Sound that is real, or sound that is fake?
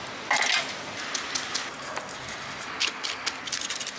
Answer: real